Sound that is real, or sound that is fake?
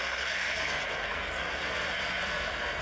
fake